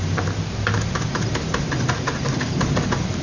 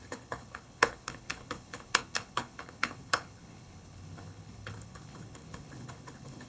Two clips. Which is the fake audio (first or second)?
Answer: second